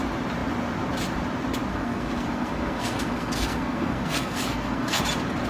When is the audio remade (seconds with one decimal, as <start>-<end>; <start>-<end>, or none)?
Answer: 1.7-5.0